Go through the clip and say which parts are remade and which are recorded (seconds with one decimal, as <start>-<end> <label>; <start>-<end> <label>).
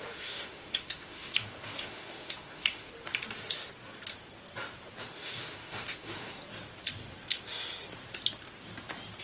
0.0-2.9 remade; 2.9-5.0 recorded; 5.0-6.4 remade; 6.4-9.2 recorded